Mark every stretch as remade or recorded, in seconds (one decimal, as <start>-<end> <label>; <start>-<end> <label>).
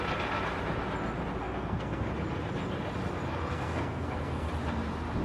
0.0-1.4 recorded; 1.4-2.1 remade; 2.1-3.5 recorded; 3.5-4.5 remade; 4.5-5.2 recorded